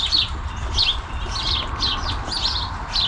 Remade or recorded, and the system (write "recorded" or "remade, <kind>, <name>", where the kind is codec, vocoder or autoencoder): recorded